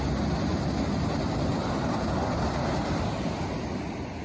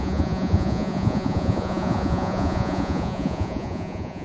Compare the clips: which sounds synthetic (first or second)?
second